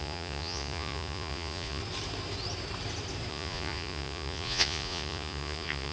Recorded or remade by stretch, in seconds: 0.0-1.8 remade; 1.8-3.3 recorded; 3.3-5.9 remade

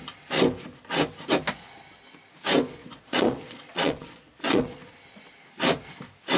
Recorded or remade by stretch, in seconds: 0.0-2.8 recorded; 2.8-4.9 remade; 4.9-6.4 recorded

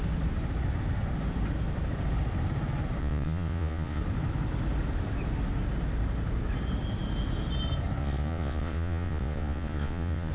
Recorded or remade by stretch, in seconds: 0.0-3.0 recorded; 3.0-4.0 remade; 4.0-8.0 recorded; 8.0-10.3 remade

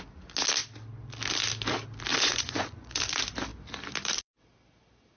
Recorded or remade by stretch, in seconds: 0.0-2.1 recorded; 2.1-3.0 remade; 3.0-5.2 recorded

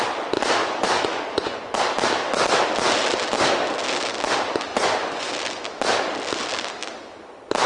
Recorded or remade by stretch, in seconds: 0.0-0.6 recorded; 0.6-1.8 remade; 1.8-4.7 recorded; 4.7-5.3 remade; 5.3-7.7 recorded